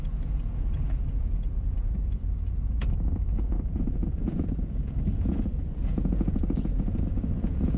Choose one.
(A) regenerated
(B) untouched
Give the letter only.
A